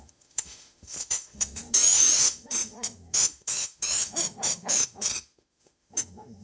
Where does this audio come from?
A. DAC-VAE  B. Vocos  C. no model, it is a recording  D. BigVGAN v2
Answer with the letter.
A